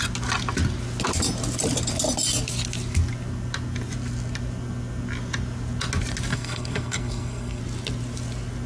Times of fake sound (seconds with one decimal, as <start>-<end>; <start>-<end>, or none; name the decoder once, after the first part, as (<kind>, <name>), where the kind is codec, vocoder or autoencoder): 6.3-7.6 (codec, SNAC)